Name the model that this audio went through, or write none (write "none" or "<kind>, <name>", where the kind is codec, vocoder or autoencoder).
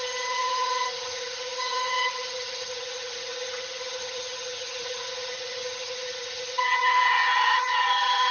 vocoder, HiFi-GAN